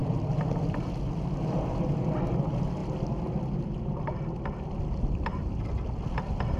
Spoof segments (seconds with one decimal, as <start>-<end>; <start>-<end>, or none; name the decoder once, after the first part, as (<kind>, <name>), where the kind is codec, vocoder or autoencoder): none